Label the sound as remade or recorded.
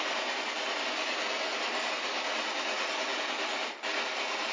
recorded